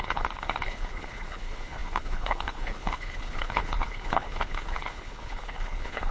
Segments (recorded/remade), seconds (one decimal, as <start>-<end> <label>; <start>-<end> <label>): 0.0-6.1 remade